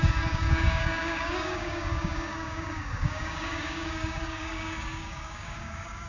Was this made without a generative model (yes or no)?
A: no